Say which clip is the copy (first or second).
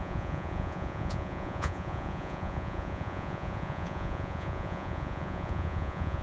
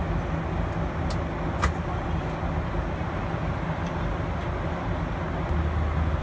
first